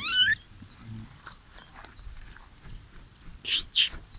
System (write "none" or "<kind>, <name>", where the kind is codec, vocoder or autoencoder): none